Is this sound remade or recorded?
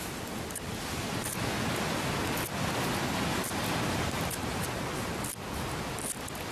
recorded